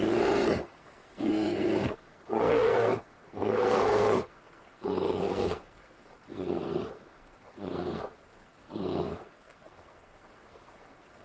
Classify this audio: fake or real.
fake